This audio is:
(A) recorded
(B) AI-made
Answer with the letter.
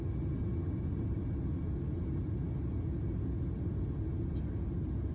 A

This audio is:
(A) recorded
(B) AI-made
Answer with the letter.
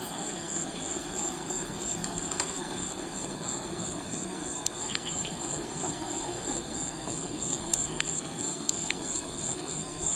B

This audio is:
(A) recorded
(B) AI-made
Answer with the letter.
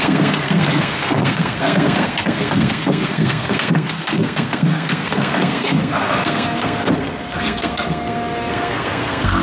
B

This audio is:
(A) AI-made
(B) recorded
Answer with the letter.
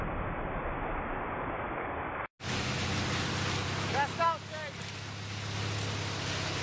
B